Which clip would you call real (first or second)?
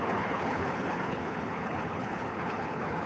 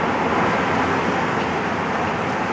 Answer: second